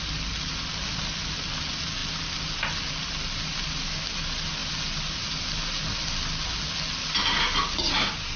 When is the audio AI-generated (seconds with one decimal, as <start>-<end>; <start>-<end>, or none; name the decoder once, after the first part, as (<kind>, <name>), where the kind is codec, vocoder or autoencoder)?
none